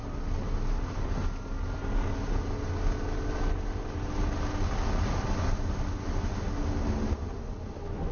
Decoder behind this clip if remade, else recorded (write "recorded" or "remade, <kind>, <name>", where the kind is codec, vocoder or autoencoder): recorded